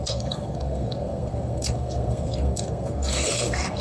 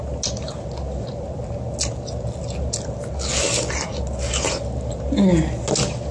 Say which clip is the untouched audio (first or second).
second